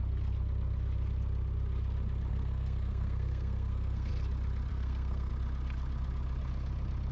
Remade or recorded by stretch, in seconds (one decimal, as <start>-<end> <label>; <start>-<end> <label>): 0.0-2.3 recorded; 2.3-4.1 remade; 4.1-4.7 recorded; 4.7-5.3 remade; 5.3-7.1 recorded